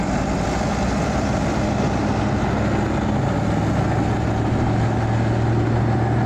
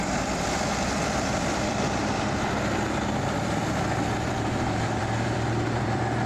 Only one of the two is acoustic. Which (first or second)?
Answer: first